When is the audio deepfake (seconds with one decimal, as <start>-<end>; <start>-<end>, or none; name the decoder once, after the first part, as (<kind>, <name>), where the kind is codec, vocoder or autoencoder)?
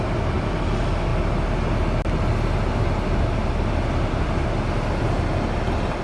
none